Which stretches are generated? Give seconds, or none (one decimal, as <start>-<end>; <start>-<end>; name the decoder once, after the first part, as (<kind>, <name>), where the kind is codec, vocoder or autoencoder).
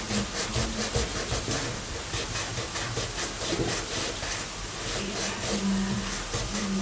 0.5-1.4 (vocoder, BigVGAN v2); 2.5-6.8